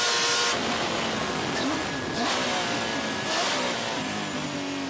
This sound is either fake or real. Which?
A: real